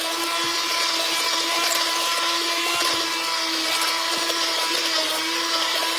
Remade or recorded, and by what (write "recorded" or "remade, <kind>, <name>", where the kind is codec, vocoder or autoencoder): recorded